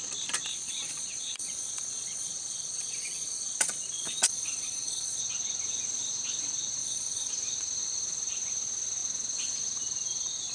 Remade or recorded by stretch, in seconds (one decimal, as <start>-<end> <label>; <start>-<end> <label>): 0.0-0.5 recorded; 0.5-5.2 remade; 5.2-6.8 recorded; 6.8-7.3 remade; 7.3-10.5 recorded